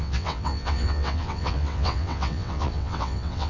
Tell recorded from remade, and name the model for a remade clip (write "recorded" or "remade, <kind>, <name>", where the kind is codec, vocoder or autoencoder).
remade, vocoder, WaveNeXt